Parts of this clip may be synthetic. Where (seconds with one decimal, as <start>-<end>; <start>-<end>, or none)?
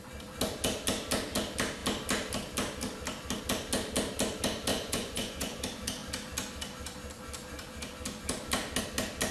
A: 4.7-5.6